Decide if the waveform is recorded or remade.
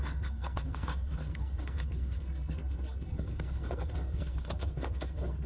remade